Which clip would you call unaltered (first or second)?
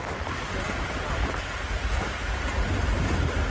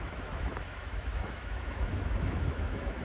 first